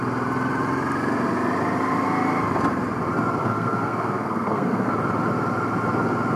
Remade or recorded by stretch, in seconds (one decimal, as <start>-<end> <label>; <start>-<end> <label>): 0.0-3.4 recorded; 3.4-4.9 remade; 4.9-6.4 recorded